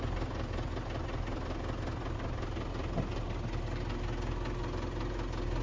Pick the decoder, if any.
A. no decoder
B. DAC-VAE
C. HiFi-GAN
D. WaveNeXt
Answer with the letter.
A